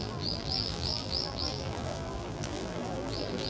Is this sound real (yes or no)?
no